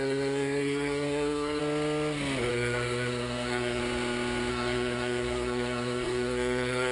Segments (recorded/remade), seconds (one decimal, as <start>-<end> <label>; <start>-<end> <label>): 0.0-1.6 remade; 1.6-2.5 recorded; 2.5-3.8 remade; 3.8-4.5 recorded; 4.5-6.9 remade

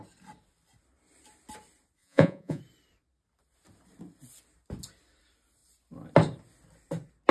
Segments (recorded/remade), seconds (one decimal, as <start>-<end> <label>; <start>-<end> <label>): 0.0-2.0 recorded; 2.0-2.6 remade; 2.6-7.3 recorded

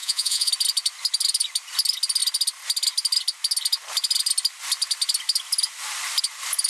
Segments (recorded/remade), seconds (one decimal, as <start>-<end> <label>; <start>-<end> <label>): 0.0-0.5 remade; 0.5-6.7 recorded